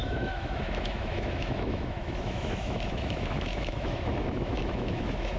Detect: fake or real fake